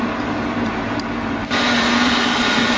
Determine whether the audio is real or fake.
fake